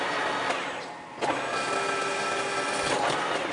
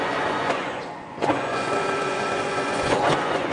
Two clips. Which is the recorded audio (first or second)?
first